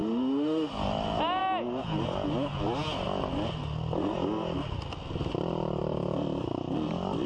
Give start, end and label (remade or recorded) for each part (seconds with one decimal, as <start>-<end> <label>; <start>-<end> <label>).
0.0-0.7 remade; 0.7-7.3 recorded